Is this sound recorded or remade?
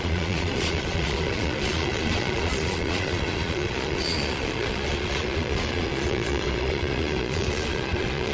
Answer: remade